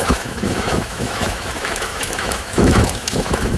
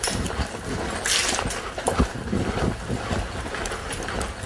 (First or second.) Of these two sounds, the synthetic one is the first